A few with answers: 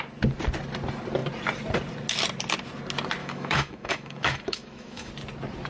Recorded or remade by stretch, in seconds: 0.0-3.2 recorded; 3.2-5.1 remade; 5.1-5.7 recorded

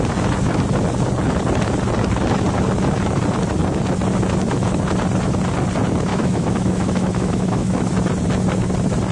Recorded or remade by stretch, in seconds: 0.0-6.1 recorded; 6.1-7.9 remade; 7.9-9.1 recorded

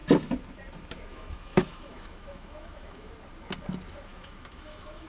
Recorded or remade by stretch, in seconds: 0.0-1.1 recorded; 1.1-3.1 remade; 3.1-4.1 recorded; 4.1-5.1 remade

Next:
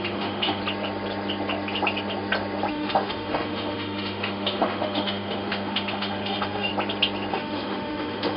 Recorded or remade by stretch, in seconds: 0.0-0.6 remade; 0.6-2.7 recorded; 2.7-6.7 remade; 6.7-7.3 recorded; 7.3-8.4 remade

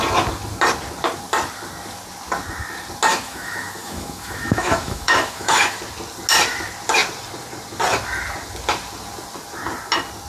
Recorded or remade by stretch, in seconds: 0.0-3.1 recorded; 3.1-5.8 remade; 5.8-10.3 recorded

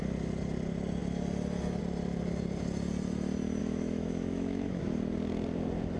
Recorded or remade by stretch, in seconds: 0.0-3.6 recorded; 3.6-4.8 remade; 4.8-6.0 recorded

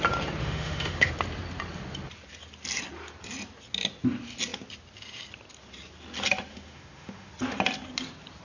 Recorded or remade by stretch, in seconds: 0.0-0.4 recorded; 0.4-1.1 remade; 1.1-6.5 recorded; 6.5-7.3 remade; 7.3-8.4 recorded

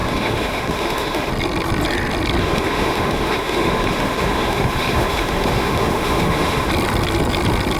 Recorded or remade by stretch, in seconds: 0.0-1.3 remade; 1.3-2.4 recorded; 2.4-6.7 remade; 6.7-7.8 recorded